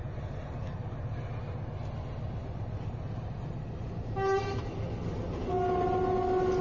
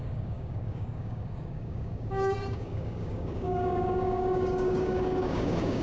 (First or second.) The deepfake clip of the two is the second